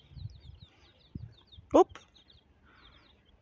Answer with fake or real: real